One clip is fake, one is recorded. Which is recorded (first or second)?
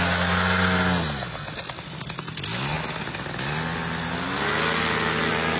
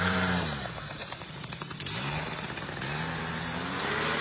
first